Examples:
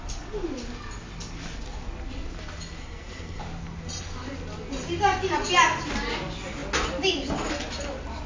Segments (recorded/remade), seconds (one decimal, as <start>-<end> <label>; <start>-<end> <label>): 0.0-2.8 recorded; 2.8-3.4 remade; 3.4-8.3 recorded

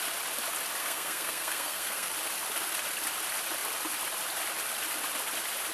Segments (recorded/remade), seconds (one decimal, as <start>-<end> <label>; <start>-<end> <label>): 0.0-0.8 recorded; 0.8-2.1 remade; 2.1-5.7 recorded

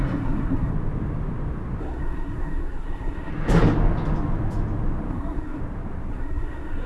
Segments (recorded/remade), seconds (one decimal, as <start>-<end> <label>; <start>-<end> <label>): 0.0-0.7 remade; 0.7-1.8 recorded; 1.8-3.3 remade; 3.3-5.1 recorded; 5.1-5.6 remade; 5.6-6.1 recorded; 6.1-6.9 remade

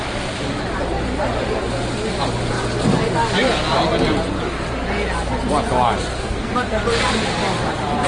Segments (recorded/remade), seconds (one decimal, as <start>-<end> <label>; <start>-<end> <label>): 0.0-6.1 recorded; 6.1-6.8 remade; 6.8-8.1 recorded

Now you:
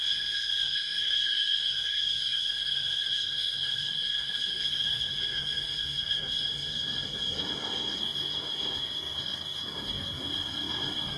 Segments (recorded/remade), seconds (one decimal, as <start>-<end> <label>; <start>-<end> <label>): 0.0-11.2 remade

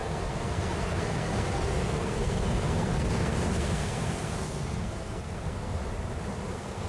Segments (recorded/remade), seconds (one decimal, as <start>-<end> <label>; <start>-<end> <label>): 0.0-5.8 remade; 5.8-6.5 recorded; 6.5-6.9 remade